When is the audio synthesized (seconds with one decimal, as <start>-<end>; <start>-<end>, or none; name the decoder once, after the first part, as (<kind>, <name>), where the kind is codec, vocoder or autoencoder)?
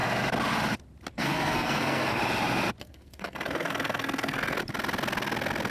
1.1-2.2 (codec, SNAC); 2.8-4.6